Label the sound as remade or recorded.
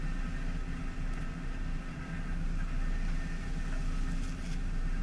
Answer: recorded